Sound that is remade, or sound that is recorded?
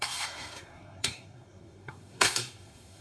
remade